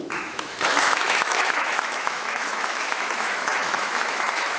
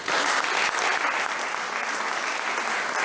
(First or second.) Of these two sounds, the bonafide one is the second